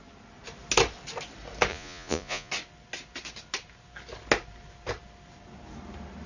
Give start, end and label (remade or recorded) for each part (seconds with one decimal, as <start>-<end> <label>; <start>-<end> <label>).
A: 0.0-1.7 recorded; 1.7-2.5 remade; 2.5-6.3 recorded